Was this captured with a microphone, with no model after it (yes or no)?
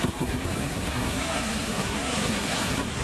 no